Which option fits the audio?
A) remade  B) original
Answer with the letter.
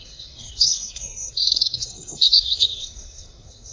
A